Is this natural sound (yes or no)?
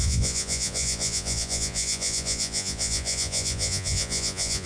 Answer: no